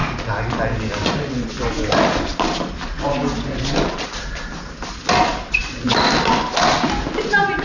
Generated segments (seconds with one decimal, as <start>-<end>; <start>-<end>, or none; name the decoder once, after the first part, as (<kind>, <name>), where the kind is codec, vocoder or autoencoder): none